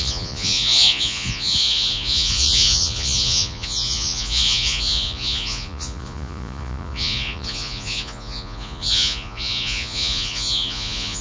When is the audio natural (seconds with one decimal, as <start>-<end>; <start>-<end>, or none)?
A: none